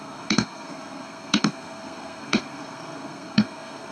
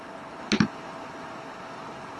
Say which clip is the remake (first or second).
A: first